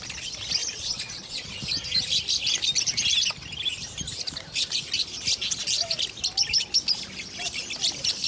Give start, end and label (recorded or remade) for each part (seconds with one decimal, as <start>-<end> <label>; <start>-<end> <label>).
0.0-0.6 recorded; 0.6-1.5 remade; 1.5-8.3 recorded